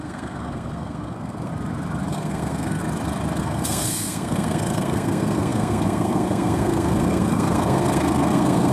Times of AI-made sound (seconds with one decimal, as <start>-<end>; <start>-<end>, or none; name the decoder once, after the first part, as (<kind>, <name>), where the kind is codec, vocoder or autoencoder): 0.0-1.5 (codec, SNAC); 2.1-2.8; 3.4-8.7